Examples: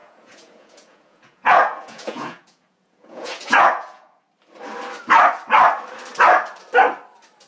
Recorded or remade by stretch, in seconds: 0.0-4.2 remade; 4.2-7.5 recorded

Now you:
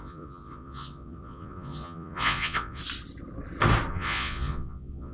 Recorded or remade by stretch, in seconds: 0.0-2.8 remade; 2.8-3.9 recorded; 3.9-5.1 remade